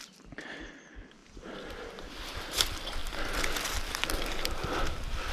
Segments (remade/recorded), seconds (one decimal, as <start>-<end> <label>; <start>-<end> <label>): 0.0-1.2 recorded; 1.2-2.1 remade; 2.1-5.3 recorded